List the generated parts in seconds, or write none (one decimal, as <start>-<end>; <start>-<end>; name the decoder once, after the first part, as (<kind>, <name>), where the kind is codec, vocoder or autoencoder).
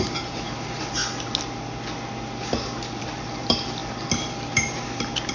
0.0-1.0 (vocoder, BigVGAN v2); 3.0-5.3